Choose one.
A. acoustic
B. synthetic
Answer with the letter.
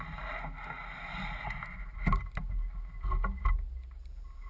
A